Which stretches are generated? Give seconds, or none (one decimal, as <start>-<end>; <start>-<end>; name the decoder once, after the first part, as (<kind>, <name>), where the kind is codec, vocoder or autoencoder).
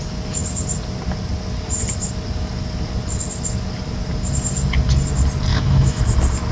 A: 5.5-6.0 (autoencoder, DAC-VAE)